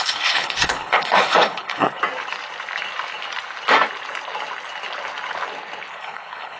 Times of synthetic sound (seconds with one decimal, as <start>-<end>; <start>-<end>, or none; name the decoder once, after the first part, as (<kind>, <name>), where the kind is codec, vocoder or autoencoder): 0.0-2.0 (codec, HILCodec); 5.9-6.6